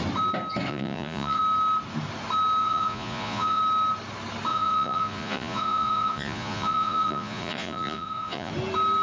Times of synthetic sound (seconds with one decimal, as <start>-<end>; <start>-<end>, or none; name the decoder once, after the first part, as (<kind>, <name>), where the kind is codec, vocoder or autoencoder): 0.7-1.4 (vocoder, Vocos); 2.6-3.6; 4.5-8.5